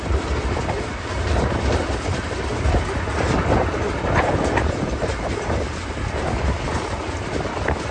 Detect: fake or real real